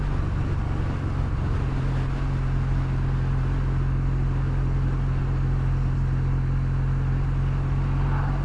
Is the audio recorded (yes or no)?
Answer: yes